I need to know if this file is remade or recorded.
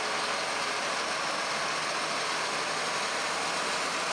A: recorded